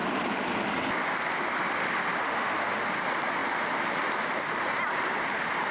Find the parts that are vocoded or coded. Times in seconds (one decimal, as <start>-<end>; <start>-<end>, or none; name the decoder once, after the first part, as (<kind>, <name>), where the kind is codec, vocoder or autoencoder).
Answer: 2.2-2.9 (autoencoder, DAC-VAE)